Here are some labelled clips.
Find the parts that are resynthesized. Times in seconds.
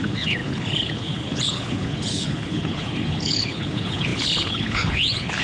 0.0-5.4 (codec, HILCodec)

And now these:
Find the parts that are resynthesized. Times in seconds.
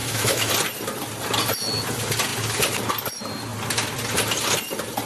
0.0-0.5 (autoencoder, DAC-VAE)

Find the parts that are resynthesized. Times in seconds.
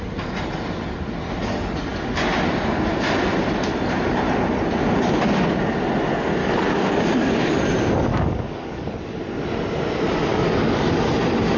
6.4-7.6 (codec, DAC); 8.1-8.9; 10.3-11.0